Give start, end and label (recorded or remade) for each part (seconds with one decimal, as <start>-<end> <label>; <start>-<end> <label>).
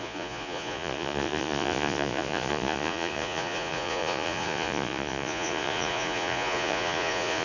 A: 0.0-7.4 remade